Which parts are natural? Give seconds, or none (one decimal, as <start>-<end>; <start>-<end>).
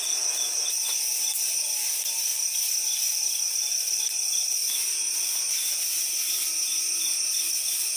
0.0-2.3; 4.0-8.0